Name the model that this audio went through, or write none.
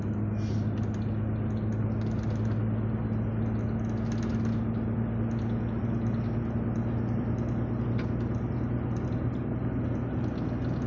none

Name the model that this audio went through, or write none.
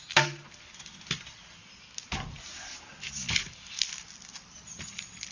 none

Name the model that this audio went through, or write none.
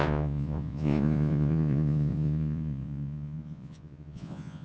vocoder, Vocos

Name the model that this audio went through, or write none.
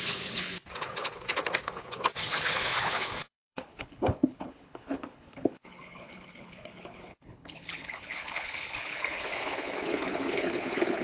codec, HILCodec